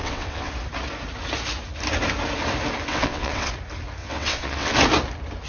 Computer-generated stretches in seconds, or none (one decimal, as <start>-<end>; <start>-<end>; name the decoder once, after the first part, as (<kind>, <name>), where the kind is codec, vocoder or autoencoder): 0.0-0.5 (vocoder, WaveNeXt); 2.9-3.5; 4.0-4.7